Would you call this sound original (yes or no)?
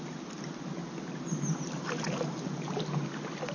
yes